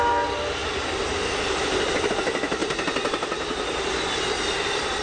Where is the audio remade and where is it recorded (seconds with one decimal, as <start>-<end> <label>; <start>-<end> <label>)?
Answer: 0.0-5.0 recorded